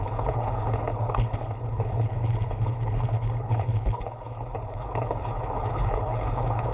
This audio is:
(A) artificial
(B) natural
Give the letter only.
A